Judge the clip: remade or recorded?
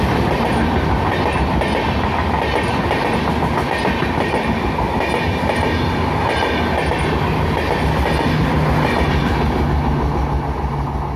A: recorded